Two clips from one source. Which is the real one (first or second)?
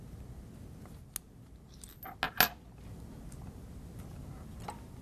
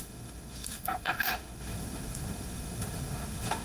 first